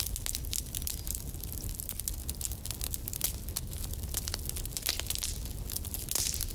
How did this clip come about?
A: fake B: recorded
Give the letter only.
B